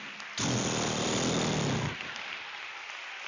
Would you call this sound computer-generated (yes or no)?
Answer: no